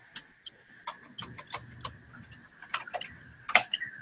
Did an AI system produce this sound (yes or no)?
no